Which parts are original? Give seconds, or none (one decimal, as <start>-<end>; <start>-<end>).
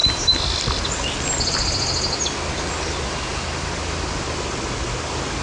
0.0-5.4